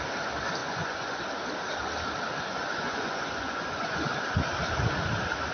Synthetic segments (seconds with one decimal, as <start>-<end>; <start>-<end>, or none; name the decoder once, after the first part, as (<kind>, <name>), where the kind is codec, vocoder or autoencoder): 0.6-1.2 (vocoder, Vocos); 2.5-4.0